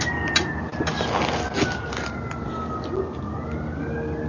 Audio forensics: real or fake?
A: real